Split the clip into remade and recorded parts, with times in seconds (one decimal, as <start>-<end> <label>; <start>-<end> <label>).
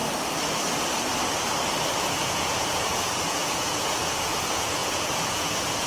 0.0-2.0 recorded; 2.0-5.9 remade